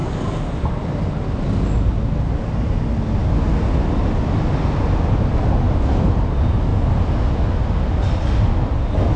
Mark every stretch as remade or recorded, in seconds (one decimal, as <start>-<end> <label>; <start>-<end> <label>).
0.0-9.2 recorded